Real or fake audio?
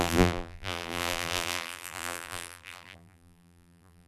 fake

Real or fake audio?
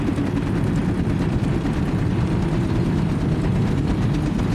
real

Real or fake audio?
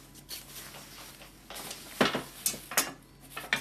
real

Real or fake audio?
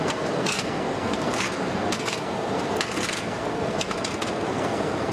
fake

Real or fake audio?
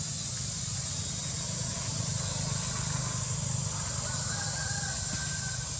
real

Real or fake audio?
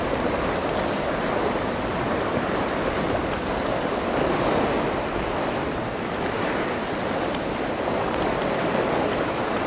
real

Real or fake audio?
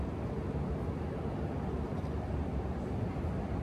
real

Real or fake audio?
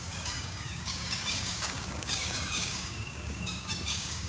fake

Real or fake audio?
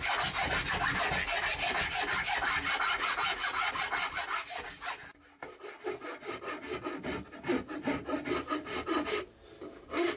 real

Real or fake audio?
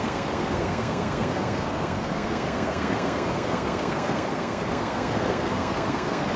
fake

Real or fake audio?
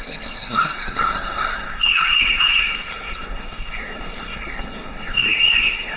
fake